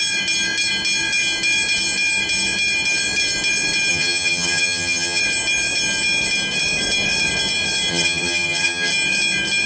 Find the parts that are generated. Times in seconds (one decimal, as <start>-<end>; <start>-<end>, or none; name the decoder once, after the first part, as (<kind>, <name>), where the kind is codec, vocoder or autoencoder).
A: 3.9-5.2 (vocoder, HiFi-GAN); 7.9-8.9